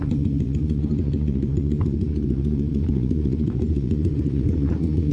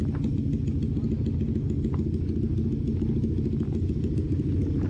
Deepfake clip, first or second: first